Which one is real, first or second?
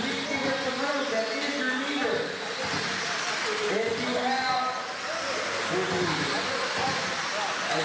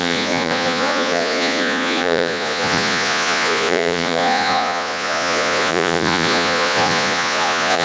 first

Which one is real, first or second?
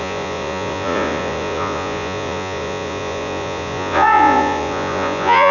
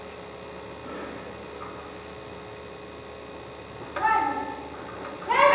second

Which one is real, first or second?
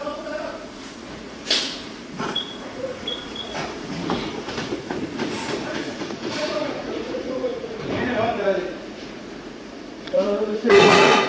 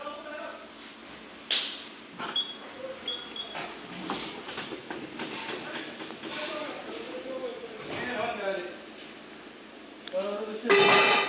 second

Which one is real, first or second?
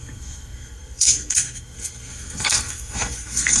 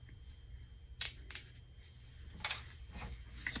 second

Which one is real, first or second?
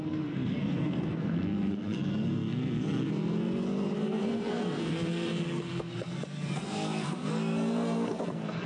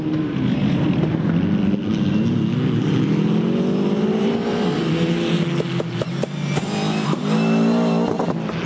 second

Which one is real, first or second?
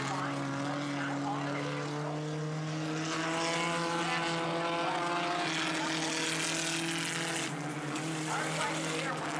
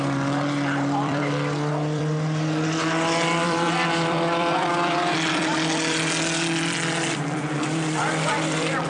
first